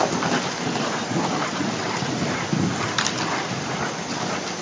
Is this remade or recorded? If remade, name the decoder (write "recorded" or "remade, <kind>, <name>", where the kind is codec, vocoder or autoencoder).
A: recorded